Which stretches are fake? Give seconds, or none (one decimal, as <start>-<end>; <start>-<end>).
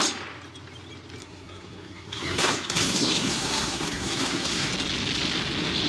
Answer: 1.2-4.7